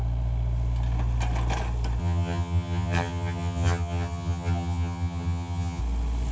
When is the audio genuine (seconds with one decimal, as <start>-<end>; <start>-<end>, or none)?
0.0-2.0; 5.8-6.3